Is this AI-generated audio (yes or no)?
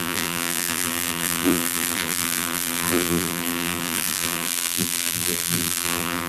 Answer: yes